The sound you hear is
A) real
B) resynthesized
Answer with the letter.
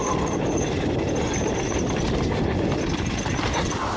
A